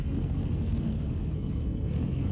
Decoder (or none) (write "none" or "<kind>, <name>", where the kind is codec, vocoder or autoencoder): codec, SNAC